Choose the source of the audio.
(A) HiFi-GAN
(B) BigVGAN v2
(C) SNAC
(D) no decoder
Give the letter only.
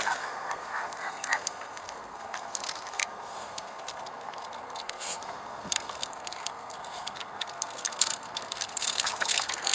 C